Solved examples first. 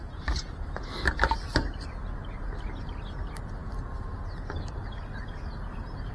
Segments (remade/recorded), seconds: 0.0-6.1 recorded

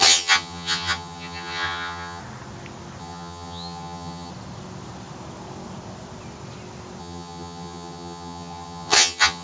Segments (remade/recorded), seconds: 0.0-2.2 remade; 2.2-3.0 recorded; 3.0-4.3 remade; 4.3-7.0 recorded; 7.0-9.4 remade

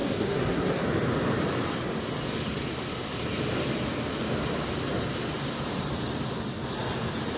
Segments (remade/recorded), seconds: 0.0-0.8 remade; 0.8-7.4 recorded

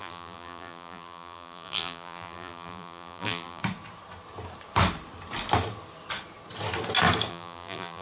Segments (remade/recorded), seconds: 0.0-3.6 remade; 3.6-7.3 recorded; 7.3-8.0 remade

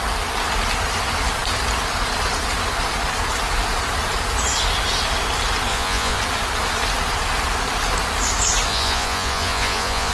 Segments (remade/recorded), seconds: 0.0-5.7 recorded; 5.7-6.2 remade; 6.2-8.7 recorded; 8.7-10.1 remade

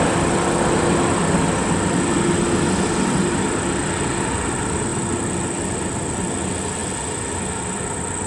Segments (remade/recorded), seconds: 0.0-8.3 recorded